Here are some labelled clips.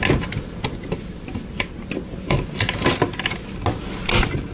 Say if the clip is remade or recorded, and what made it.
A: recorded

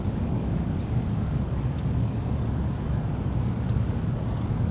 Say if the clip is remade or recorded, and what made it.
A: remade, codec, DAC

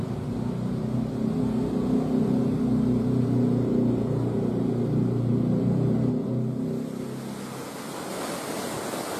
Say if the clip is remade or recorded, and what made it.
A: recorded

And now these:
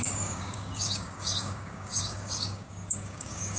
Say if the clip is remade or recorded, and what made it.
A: remade, codec, DAC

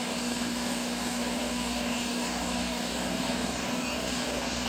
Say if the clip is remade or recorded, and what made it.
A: remade, codec, DAC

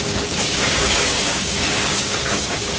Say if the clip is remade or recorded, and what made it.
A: remade, codec, DAC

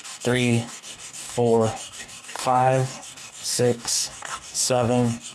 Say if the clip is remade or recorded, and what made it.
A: remade, codec, DAC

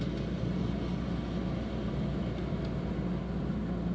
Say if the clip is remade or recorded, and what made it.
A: recorded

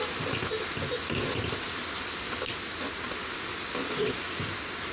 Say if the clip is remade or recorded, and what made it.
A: recorded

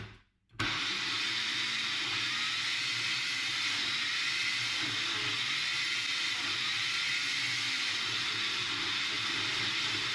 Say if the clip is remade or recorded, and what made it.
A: recorded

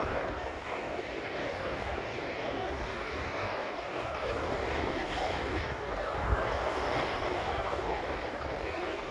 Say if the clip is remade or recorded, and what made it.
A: remade, codec, DAC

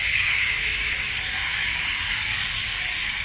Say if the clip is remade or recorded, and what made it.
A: remade, codec, DAC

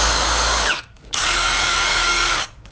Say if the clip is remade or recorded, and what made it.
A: remade, codec, DAC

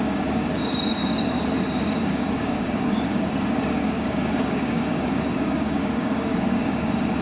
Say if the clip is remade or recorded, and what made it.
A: remade, codec, DAC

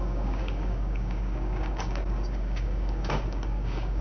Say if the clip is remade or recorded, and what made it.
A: remade, codec, DAC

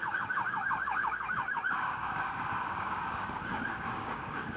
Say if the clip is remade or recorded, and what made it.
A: remade, codec, DAC